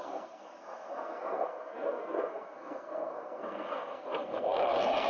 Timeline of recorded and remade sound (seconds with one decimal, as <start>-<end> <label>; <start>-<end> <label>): 0.0-5.1 remade